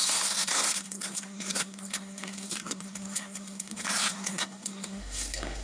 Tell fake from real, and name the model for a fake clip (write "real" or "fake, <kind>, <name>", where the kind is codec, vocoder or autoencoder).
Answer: fake, codec, SNAC